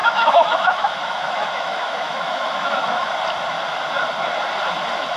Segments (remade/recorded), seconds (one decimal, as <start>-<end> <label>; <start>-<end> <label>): 0.0-3.1 remade; 3.1-5.2 recorded